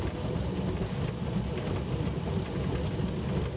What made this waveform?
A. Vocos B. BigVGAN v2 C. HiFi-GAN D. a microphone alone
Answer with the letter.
D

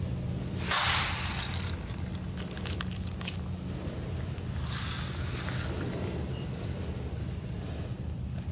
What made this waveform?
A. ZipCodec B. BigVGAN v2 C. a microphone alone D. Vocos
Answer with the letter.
C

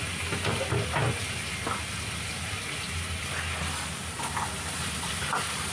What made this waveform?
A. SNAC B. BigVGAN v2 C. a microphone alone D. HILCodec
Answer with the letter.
C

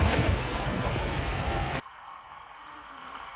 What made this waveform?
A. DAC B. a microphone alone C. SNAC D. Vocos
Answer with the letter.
C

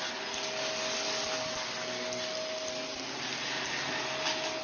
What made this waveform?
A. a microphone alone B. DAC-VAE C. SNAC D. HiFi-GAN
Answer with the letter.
A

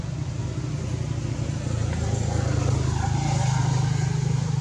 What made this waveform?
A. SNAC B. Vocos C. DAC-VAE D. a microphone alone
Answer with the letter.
D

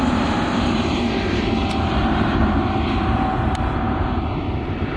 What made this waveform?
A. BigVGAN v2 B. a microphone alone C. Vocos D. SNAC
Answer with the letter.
A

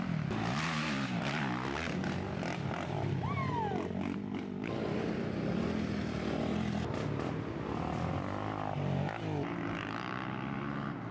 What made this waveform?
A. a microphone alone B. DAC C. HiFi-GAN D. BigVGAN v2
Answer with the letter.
A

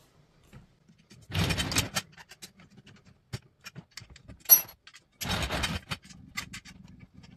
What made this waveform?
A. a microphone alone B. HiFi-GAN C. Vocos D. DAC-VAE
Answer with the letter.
A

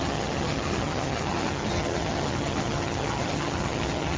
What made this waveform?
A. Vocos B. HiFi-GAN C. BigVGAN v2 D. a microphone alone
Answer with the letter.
B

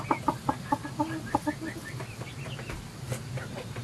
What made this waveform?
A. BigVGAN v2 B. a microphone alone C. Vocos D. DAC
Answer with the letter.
B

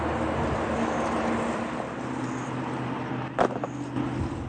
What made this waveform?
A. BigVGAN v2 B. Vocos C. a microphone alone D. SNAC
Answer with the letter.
C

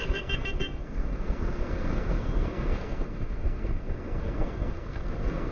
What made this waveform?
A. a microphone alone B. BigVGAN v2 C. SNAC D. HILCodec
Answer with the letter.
C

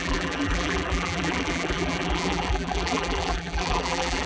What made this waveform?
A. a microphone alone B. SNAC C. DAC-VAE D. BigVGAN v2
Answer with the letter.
D